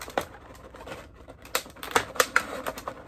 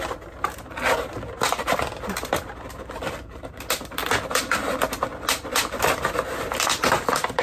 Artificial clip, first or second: first